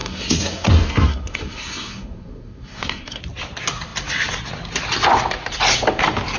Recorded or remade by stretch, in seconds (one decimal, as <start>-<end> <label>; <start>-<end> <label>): 0.0-3.2 remade; 3.2-6.4 recorded